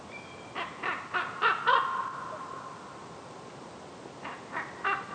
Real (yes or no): yes